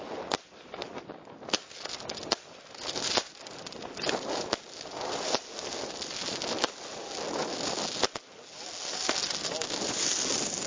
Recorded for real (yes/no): yes